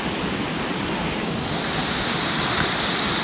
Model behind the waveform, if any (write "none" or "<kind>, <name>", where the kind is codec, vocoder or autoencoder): none